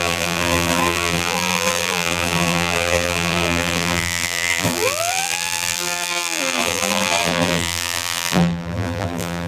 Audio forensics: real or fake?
fake